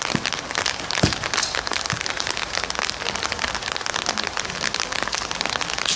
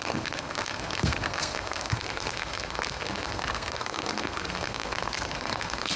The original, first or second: first